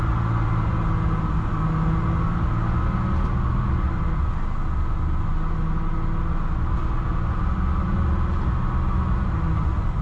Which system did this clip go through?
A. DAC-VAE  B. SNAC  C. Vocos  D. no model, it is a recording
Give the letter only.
D